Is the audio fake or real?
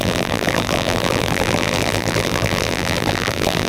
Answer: fake